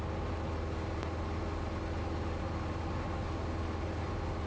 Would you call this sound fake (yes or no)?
no